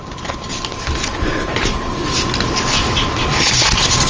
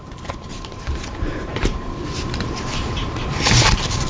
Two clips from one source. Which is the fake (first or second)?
second